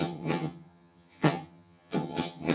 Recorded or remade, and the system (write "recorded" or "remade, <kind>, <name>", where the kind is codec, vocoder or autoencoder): remade, vocoder, HiFi-GAN